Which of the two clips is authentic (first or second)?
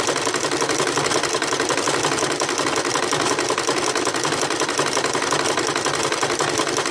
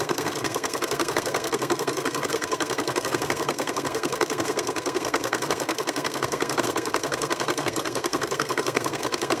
first